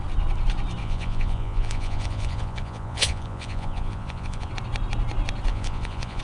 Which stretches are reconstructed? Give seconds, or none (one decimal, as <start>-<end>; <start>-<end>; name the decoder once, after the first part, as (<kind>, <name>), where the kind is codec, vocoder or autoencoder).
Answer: 0.8-4.5 (vocoder, Vocos); 5.5-6.2

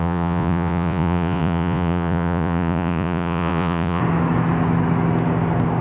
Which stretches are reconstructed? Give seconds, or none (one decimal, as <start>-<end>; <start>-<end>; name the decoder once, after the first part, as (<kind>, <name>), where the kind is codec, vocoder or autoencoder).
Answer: 0.0-4.0 (vocoder, Vocos)

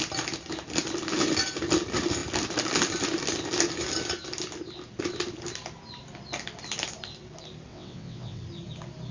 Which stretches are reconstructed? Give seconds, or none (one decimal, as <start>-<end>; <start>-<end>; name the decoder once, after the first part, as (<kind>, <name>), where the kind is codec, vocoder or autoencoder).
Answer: 7.7-8.4 (vocoder, WaveNeXt)

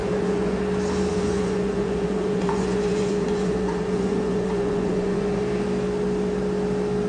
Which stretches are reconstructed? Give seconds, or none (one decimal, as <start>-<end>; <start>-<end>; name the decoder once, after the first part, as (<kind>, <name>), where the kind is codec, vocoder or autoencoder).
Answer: 0.0-0.6 (vocoder, Vocos); 1.1-5.4

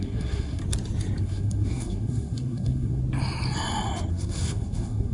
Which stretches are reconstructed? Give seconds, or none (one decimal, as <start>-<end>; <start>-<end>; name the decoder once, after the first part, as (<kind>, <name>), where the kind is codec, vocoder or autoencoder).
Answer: 0.0-0.6 (codec, SNAC); 1.2-3.0; 4.1-5.1

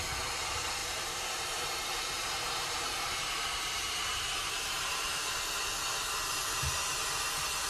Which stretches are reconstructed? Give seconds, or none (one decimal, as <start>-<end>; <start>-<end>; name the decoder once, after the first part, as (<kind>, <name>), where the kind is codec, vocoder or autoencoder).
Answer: 0.8-5.3 (vocoder, BigVGAN v2)

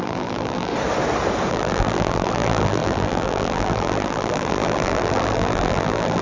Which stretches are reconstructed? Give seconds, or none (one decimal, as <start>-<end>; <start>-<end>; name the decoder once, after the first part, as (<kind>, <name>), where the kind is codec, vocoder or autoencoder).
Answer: 0.0-0.7 (vocoder, BigVGAN v2); 1.5-6.2

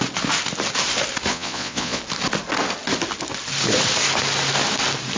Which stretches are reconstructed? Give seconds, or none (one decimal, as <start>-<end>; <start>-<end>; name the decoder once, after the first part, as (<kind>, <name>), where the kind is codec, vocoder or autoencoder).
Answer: 1.3-2.0 (vocoder, Vocos)